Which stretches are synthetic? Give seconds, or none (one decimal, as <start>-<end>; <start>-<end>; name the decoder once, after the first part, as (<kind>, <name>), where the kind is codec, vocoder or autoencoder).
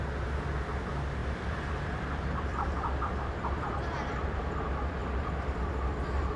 1.2-4.4 (vocoder, BigVGAN v2); 5.0-6.4